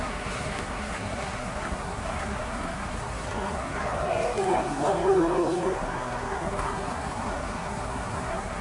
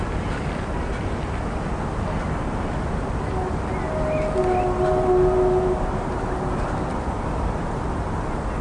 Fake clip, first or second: first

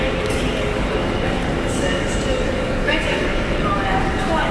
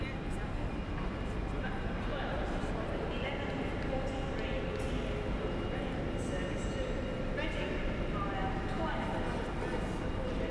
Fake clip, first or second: first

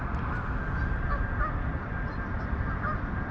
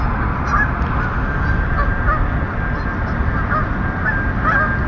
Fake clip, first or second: first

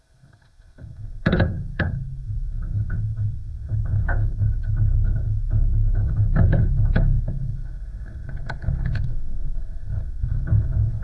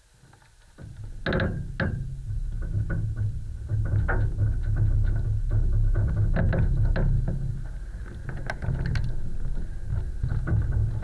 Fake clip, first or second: first